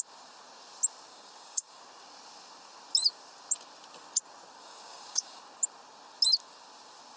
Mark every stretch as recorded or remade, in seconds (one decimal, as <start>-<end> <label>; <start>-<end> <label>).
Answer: 0.0-1.1 recorded; 1.1-1.8 remade; 1.8-4.6 recorded; 4.6-5.4 remade; 5.4-7.2 recorded